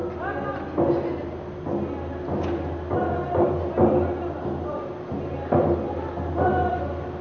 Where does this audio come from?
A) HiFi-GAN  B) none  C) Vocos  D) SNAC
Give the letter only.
B